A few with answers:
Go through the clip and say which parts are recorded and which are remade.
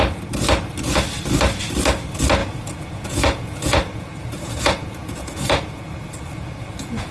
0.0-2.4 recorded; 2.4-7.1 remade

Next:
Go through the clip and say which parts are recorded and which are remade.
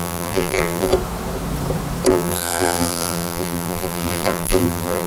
0.0-0.9 remade; 0.9-2.1 recorded; 2.1-5.1 remade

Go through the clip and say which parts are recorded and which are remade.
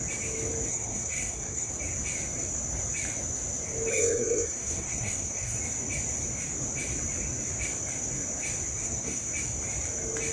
0.0-0.7 recorded; 0.7-1.7 remade; 1.7-3.9 recorded; 3.9-5.6 remade; 5.6-8.8 recorded; 8.8-9.3 remade; 9.3-10.3 recorded